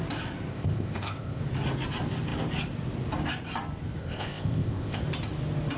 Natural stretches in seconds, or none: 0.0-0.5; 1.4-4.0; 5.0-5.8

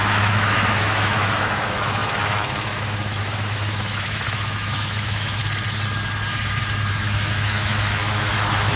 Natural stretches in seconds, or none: 5.4-6.9